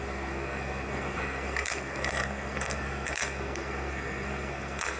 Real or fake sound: fake